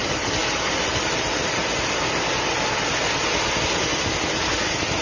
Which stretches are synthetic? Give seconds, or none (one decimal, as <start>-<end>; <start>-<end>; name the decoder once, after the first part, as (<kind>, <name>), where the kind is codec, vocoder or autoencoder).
none